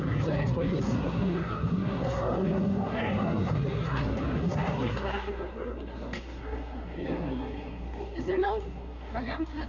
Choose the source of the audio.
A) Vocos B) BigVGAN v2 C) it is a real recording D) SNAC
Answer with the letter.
D